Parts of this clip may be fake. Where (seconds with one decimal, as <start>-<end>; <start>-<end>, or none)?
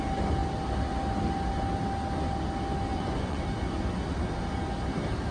2.9-3.4